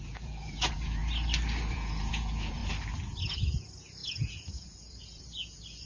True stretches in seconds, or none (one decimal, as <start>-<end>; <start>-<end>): 1.0-1.7; 2.6-3.1